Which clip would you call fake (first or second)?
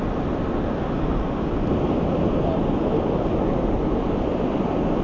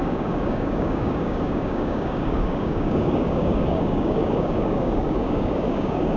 second